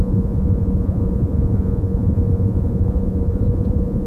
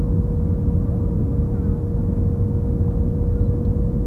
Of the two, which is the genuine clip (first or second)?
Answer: second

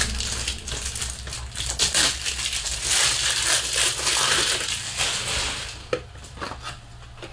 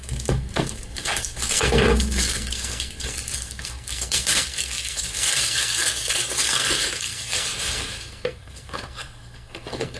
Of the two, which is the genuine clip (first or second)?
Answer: first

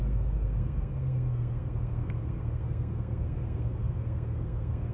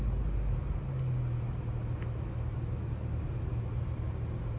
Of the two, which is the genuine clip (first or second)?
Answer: second